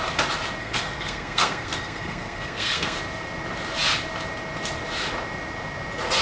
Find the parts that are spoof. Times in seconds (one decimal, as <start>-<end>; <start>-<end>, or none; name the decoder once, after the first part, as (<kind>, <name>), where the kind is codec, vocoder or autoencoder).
0.6-3.0 (codec, SNAC)